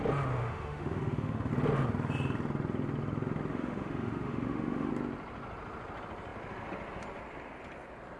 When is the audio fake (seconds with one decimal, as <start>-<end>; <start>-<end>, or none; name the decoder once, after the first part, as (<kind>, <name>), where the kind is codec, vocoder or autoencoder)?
0.4-1.5 (autoencoder, DAC-VAE); 3.5-4.9